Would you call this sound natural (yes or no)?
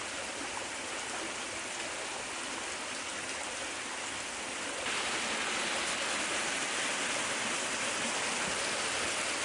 yes